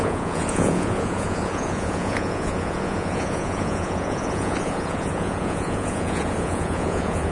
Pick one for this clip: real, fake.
fake